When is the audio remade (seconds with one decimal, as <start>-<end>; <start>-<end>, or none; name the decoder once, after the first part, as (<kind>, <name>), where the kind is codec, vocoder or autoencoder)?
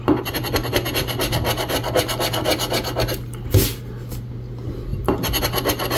none